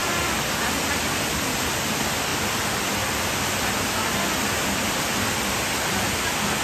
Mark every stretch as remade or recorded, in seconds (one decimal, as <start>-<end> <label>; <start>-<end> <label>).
0.0-6.6 recorded